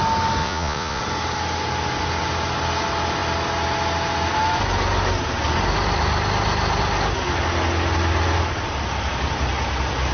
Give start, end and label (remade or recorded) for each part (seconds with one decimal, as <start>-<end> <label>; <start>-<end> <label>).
0.0-0.4 recorded; 0.4-1.0 remade; 1.0-10.1 recorded